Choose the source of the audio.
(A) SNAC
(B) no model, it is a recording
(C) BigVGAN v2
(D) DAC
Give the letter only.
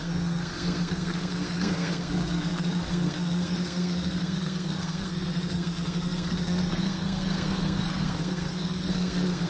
A